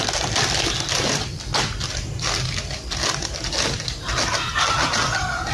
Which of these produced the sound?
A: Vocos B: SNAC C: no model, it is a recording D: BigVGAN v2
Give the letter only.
C